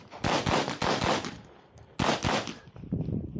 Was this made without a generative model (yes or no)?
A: yes